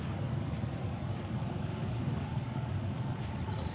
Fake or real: fake